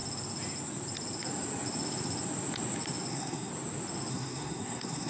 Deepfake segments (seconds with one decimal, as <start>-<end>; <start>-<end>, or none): 3.1-3.5; 4.1-5.1